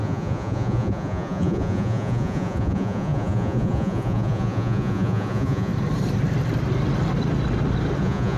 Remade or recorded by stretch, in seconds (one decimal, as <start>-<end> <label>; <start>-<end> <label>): 0.0-5.7 remade; 5.7-8.0 recorded; 8.0-8.4 remade